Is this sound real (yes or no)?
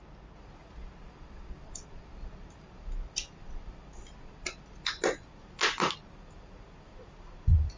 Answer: yes